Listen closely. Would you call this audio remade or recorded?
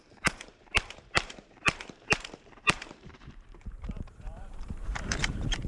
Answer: remade